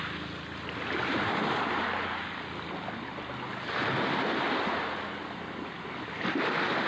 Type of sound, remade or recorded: recorded